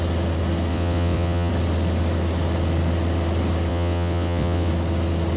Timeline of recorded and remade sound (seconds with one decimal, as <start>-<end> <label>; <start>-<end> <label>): 0.0-0.7 recorded; 0.7-1.5 remade; 1.5-3.7 recorded; 3.7-4.7 remade; 4.7-5.4 recorded